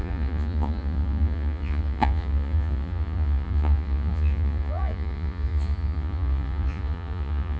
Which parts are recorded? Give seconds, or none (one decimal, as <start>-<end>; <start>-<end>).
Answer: none